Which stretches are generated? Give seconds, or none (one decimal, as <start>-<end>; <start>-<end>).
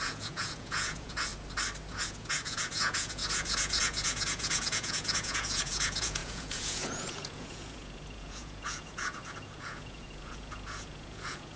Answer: 0.0-1.3; 1.9-11.6